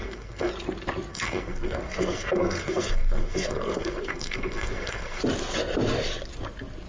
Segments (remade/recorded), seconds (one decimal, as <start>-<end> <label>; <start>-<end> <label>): 0.0-0.5 remade; 0.5-1.1 recorded; 1.1-5.2 remade; 5.2-6.9 recorded

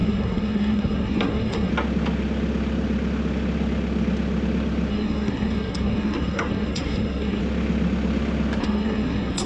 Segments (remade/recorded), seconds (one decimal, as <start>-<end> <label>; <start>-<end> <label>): 0.0-1.7 remade; 1.7-4.9 recorded; 4.9-7.4 remade; 7.4-8.6 recorded; 8.6-9.5 remade

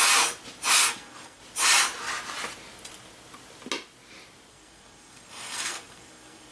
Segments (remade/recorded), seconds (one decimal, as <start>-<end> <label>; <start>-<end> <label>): 0.0-0.9 recorded; 0.9-1.4 remade; 1.4-4.5 recorded; 4.5-6.5 remade